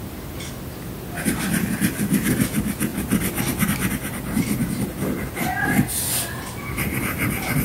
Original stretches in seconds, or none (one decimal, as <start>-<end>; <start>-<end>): 0.0-7.6